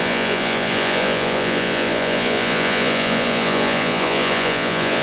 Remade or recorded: remade